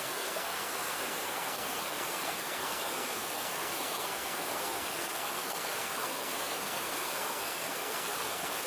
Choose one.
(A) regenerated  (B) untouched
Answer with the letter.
A